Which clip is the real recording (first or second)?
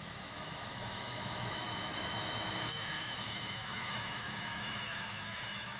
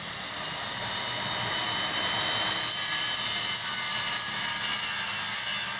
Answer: second